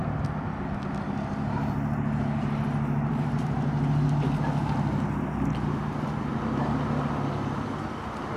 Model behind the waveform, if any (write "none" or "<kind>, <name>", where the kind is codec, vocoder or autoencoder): none